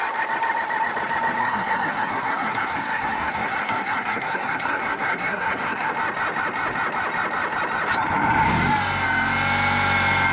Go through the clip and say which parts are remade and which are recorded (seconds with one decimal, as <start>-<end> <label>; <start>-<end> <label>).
0.0-1.4 recorded; 1.4-5.9 remade; 5.9-10.3 recorded